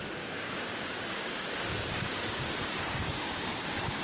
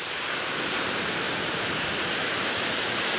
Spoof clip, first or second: first